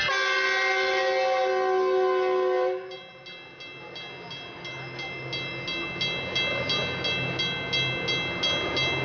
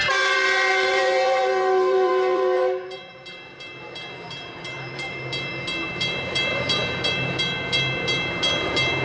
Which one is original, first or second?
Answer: first